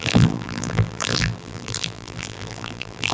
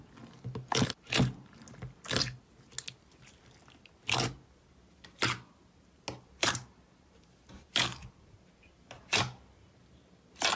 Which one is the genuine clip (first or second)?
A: second